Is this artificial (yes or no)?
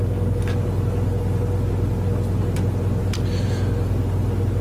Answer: no